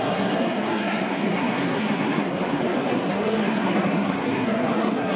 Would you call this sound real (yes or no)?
no